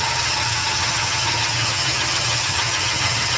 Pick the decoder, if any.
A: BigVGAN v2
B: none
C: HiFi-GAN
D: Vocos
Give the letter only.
C